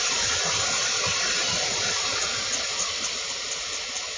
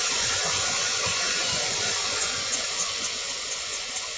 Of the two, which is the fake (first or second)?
second